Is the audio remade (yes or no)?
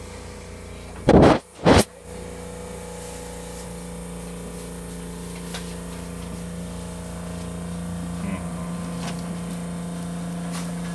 no